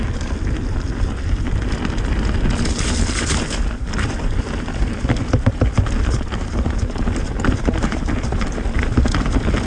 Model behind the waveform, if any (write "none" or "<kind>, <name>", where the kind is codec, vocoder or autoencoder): none